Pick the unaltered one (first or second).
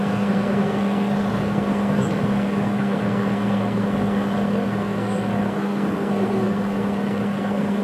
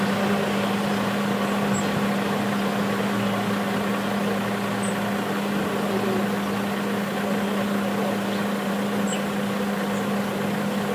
second